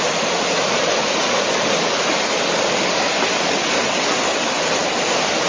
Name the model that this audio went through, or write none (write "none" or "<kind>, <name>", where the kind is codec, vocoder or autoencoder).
none